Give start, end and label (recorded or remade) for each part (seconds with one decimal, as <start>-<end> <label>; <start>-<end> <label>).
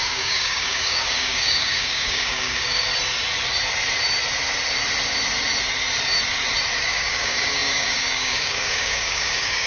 0.0-2.9 remade; 2.9-6.8 recorded; 6.8-9.7 remade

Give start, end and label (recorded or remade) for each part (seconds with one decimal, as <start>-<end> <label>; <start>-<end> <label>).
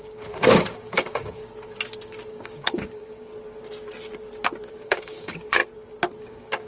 0.0-1.4 remade; 1.4-2.3 recorded; 2.3-3.3 remade; 3.3-4.7 recorded; 4.7-5.6 remade; 5.6-6.2 recorded; 6.2-6.7 remade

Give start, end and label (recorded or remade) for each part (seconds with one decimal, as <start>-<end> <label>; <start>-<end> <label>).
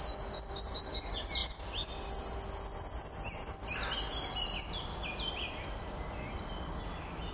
0.0-7.3 recorded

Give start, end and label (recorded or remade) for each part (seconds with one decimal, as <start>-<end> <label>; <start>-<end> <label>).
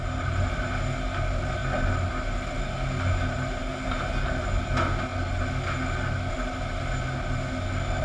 0.0-8.0 recorded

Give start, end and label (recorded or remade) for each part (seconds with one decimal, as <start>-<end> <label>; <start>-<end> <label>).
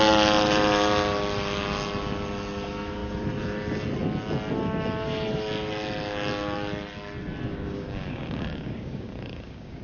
0.0-7.5 recorded; 7.5-9.8 remade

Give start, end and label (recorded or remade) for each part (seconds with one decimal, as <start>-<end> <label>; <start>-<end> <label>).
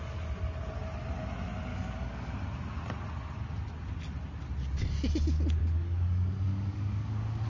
0.0-1.7 recorded; 1.7-2.3 remade; 2.3-5.6 recorded; 5.6-7.5 remade